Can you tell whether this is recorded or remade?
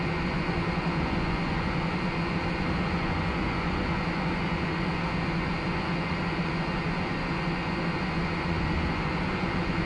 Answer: remade